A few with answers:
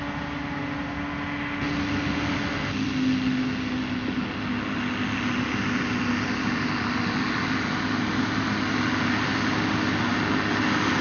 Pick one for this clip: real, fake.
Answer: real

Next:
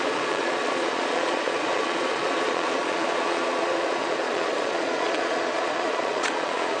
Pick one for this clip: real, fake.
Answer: fake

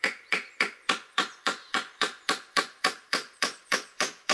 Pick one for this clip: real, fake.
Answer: fake